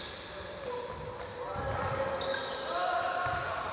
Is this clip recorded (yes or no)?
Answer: yes